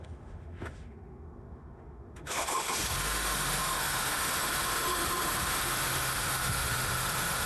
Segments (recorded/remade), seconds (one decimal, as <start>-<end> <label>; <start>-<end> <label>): 0.0-7.5 remade